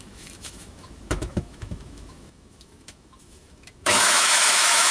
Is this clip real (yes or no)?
no